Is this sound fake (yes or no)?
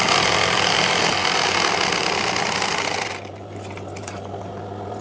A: no